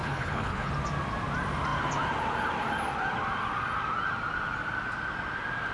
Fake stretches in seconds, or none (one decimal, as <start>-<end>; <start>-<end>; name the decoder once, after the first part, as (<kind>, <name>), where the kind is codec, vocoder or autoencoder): 0.0-0.7 (codec, HILCodec)